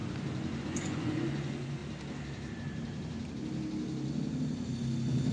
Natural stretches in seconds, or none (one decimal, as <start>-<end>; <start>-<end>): 0.0-0.6; 1.8-5.3